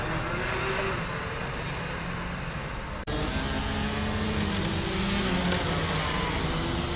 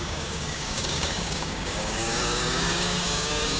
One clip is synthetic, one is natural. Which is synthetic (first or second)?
second